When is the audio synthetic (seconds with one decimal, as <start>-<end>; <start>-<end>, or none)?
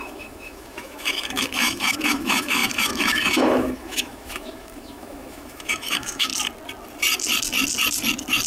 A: 0.0-6.3